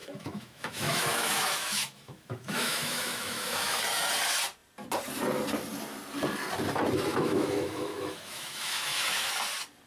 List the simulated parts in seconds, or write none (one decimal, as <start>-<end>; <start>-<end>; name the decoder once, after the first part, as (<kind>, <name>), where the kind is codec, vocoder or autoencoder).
0.0-3.8 (autoencoder, DAC-VAE); 7.1-9.3